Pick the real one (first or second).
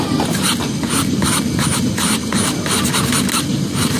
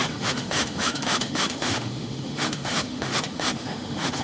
first